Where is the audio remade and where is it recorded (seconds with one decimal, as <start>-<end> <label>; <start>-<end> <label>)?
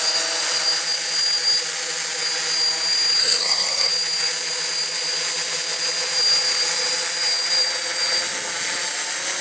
0.0-3.2 recorded; 3.2-3.9 remade; 3.9-9.4 recorded